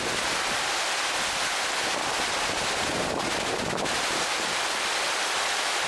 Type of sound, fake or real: real